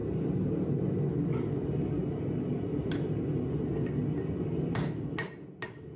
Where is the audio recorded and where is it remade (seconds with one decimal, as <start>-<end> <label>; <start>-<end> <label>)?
0.0-6.0 recorded

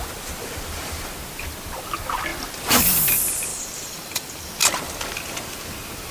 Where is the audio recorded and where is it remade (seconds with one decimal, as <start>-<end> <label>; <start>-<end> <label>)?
0.0-3.5 recorded; 3.5-4.5 remade; 4.5-6.1 recorded

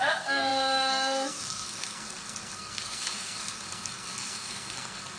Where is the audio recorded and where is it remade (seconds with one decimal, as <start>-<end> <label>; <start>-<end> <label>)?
0.0-5.2 remade

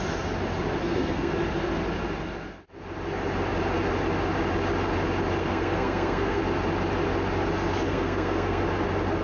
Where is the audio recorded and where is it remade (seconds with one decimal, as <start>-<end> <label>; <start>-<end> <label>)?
0.0-0.8 recorded; 0.8-1.3 remade; 1.3-5.4 recorded; 5.4-6.4 remade; 6.4-7.9 recorded; 7.9-8.6 remade; 8.6-9.2 recorded

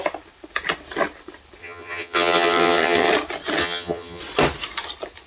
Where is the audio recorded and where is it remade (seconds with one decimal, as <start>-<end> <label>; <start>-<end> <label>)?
0.0-1.6 recorded; 1.6-3.1 remade; 3.1-3.6 recorded; 3.6-4.2 remade; 4.2-5.3 recorded

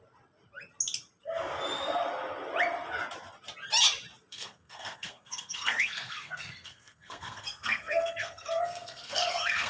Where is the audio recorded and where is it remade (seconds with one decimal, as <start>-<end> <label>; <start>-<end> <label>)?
0.0-4.3 recorded; 4.3-9.7 remade

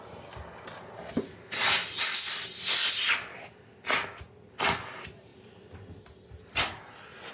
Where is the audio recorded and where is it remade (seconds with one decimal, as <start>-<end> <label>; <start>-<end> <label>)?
0.0-7.3 recorded

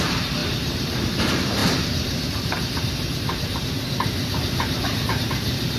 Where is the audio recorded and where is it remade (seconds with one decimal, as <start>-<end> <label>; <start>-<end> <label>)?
0.0-5.8 remade